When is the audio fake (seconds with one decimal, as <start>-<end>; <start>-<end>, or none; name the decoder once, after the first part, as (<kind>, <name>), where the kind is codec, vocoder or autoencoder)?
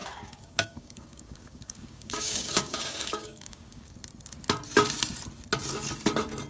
0.0-3.9 (codec, DAC)